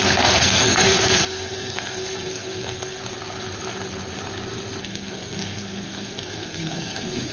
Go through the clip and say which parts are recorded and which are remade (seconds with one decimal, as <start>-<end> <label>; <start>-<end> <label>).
0.0-3.0 remade; 3.0-4.8 recorded; 4.8-7.3 remade